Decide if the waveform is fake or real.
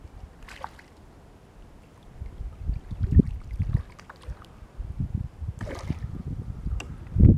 real